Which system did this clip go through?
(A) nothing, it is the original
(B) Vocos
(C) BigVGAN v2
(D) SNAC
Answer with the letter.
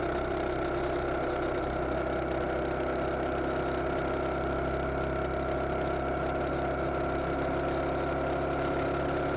A